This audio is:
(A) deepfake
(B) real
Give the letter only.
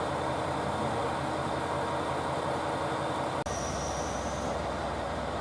B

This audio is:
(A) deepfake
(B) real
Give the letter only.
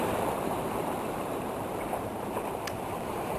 A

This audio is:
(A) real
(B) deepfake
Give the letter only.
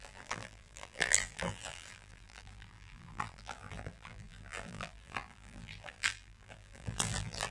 B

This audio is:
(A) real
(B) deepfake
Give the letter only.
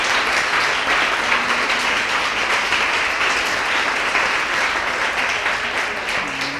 A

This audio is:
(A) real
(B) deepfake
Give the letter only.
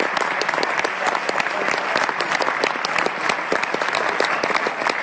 A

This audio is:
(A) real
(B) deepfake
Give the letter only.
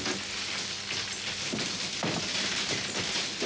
A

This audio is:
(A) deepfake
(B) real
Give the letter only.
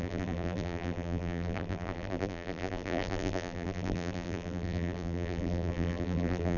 A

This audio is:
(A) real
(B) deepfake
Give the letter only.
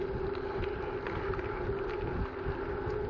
A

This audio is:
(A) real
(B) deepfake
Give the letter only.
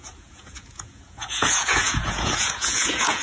B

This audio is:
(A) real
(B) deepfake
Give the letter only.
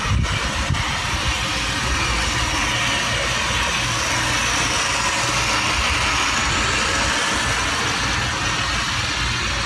A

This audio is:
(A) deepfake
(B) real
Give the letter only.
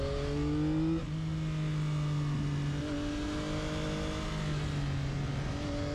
B